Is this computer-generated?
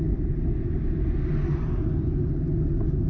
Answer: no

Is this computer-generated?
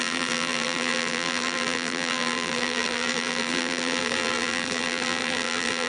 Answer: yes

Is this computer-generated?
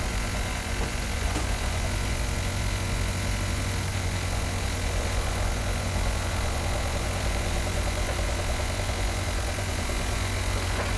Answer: yes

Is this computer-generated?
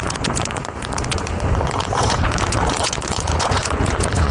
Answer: yes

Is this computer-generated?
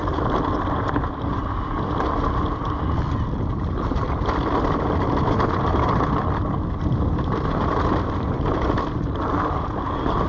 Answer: no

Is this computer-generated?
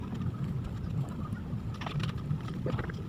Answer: no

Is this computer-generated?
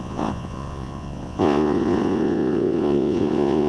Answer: yes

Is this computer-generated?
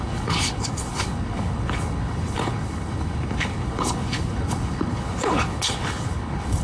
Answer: yes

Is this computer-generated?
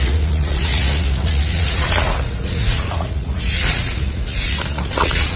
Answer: yes